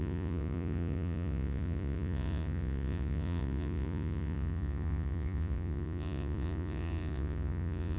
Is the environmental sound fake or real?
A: fake